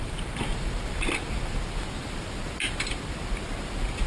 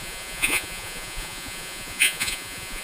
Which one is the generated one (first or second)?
second